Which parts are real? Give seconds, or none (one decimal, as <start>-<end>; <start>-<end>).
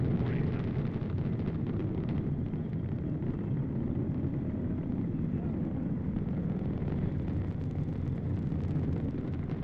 0.0-1.8; 6.4-9.6